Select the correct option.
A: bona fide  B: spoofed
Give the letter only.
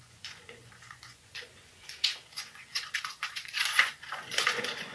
B